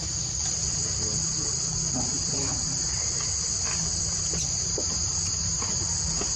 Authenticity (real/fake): real